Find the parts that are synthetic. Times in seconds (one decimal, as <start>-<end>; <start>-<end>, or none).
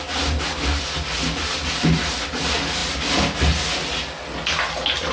none